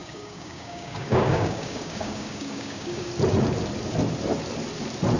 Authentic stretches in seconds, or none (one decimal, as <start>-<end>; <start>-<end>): 3.1-5.2